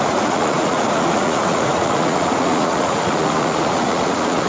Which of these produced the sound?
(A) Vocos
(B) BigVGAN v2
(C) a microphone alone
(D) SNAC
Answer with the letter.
A